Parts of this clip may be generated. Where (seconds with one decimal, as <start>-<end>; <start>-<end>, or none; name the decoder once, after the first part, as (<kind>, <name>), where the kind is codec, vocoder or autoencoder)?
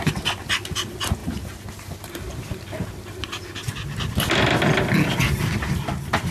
none